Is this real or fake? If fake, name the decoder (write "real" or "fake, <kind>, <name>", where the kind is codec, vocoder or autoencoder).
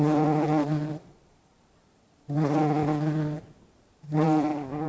fake, vocoder, BigVGAN v2